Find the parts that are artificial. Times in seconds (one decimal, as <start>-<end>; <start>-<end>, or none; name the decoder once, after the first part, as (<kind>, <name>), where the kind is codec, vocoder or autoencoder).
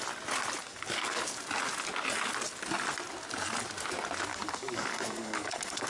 0.6-1.2 (codec, DAC); 4.3-5.9